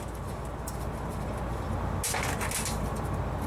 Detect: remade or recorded recorded